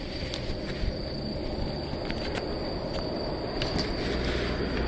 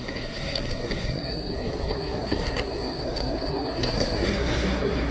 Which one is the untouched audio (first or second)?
first